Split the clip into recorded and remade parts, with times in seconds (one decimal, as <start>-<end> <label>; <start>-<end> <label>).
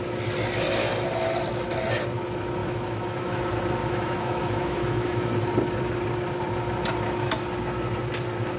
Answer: 0.0-2.6 recorded; 2.6-3.4 remade; 3.4-3.8 recorded; 3.8-5.3 remade; 5.3-8.6 recorded